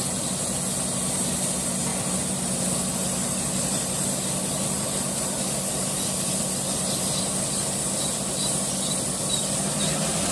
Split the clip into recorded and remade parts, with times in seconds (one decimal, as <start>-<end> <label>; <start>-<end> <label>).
0.0-10.3 recorded